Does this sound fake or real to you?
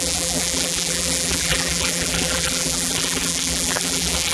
fake